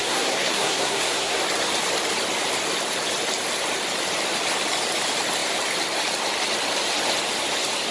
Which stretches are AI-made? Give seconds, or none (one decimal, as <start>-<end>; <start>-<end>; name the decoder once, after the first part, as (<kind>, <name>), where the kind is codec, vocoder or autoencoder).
0.0-1.4 (codec, SNAC)